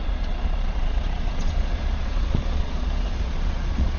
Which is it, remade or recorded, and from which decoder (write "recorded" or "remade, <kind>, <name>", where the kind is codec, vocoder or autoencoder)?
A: remade, vocoder, Vocos